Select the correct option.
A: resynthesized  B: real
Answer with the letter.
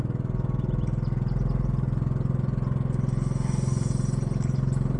B